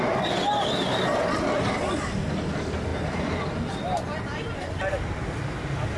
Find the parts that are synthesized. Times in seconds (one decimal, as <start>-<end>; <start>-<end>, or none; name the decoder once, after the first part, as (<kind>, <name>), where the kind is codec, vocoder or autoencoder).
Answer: none